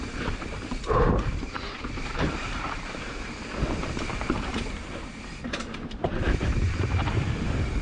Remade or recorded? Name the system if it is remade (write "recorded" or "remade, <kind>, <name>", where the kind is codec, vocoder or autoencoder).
remade, vocoder, BigVGAN v2